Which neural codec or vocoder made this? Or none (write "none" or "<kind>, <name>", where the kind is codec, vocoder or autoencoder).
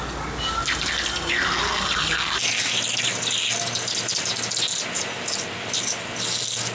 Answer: none